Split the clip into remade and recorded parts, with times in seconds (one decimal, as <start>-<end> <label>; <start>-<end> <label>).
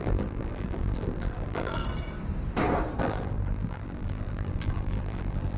0.0-1.8 remade; 1.8-3.0 recorded; 3.0-5.6 remade